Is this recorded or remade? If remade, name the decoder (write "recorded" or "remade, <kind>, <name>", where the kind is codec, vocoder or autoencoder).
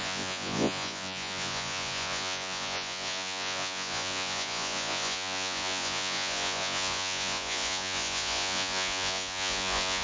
remade, vocoder, Vocos